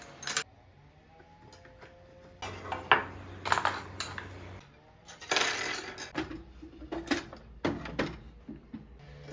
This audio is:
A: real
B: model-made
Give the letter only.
A